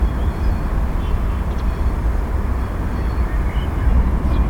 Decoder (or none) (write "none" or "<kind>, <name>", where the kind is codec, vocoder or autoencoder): vocoder, BigVGAN v2